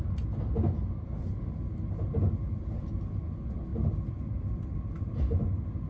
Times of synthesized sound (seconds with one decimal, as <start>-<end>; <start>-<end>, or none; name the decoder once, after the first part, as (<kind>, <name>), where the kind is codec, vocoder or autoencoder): none